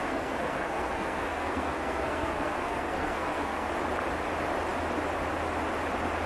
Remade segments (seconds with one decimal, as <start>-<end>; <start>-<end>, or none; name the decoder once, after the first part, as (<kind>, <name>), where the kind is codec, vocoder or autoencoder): 0.0-3.7 (codec, SNAC)